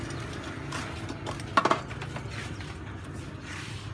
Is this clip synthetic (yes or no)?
no